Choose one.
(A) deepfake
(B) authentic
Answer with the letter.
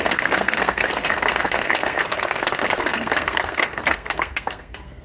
A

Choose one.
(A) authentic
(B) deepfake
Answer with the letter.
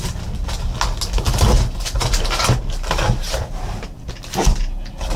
A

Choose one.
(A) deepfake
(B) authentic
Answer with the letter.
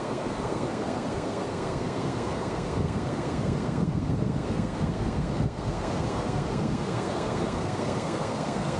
A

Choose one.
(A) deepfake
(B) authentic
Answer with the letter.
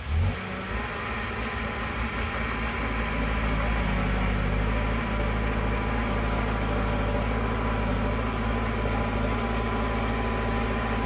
B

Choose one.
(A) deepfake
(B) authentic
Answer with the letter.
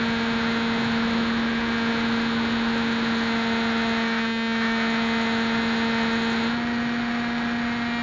B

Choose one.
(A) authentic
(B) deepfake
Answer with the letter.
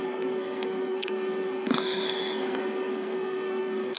B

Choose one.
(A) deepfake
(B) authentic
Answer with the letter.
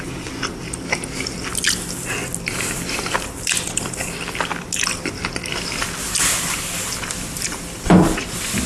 B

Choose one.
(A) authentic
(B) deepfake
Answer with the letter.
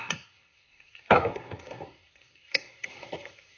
B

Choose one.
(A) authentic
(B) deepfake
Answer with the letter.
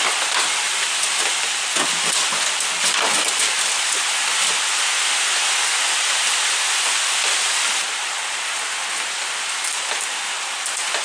A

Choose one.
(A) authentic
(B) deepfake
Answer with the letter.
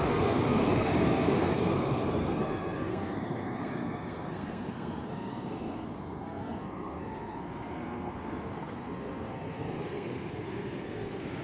B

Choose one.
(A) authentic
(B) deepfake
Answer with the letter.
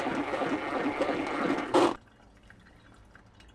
A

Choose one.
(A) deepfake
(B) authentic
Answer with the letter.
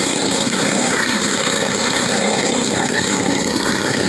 A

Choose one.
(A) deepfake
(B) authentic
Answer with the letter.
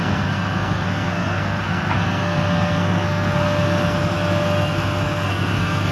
A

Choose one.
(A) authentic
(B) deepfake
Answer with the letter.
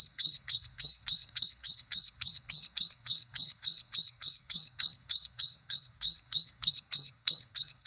B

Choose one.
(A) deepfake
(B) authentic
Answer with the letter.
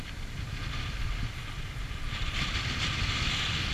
B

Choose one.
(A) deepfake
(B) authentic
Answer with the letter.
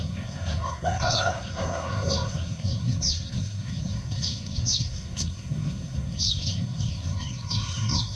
A